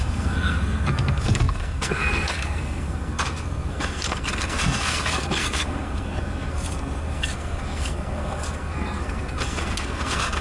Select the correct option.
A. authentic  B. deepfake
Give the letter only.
B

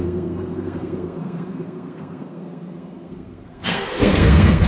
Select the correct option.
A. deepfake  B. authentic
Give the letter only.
A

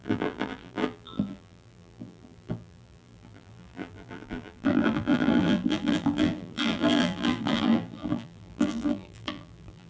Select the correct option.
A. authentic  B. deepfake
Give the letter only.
B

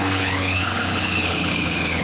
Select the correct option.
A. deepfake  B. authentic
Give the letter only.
A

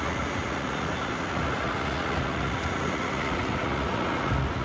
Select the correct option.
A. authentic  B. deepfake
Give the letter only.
B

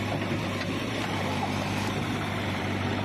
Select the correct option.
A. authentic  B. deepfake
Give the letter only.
B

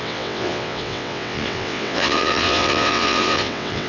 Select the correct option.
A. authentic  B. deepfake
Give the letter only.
B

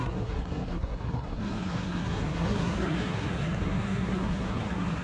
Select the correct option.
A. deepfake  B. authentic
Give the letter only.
A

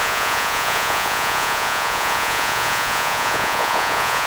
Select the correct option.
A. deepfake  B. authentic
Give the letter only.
A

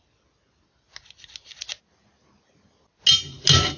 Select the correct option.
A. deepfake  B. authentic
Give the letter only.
B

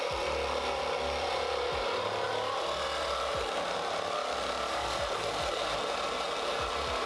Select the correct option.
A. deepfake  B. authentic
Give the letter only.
B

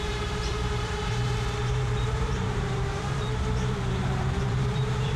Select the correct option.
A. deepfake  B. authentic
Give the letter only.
A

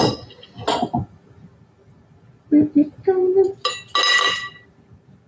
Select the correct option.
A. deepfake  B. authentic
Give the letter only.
B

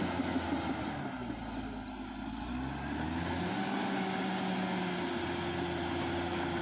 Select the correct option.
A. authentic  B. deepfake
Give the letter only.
A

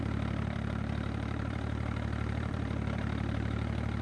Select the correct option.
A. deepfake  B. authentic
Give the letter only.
A